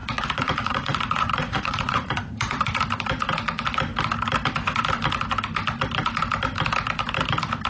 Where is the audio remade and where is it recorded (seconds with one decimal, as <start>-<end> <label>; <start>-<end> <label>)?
0.0-2.8 remade; 2.8-7.7 recorded